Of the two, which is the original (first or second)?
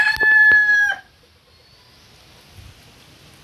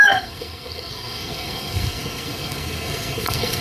first